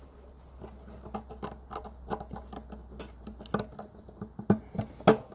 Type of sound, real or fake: real